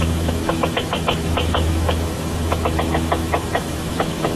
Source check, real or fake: fake